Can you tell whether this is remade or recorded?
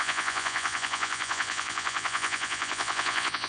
remade